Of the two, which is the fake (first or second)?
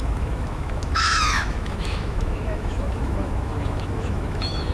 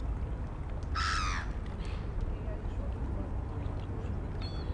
first